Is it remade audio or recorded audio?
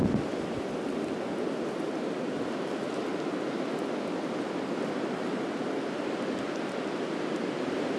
recorded